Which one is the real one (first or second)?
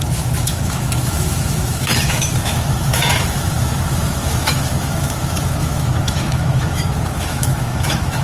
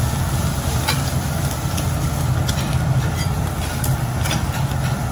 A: second